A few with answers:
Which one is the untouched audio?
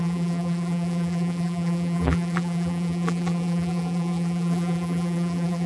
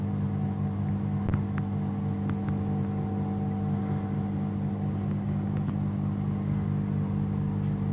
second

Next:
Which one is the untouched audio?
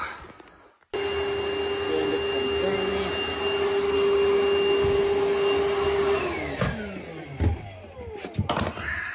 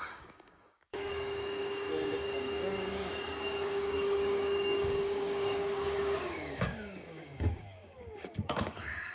first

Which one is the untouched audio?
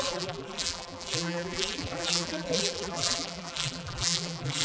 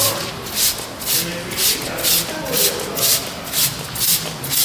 second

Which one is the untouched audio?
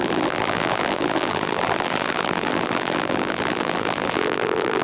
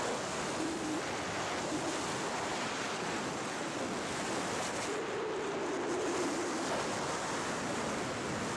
second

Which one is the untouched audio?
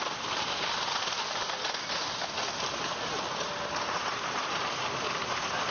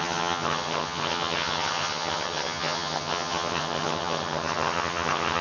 first